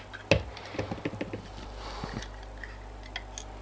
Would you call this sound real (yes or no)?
yes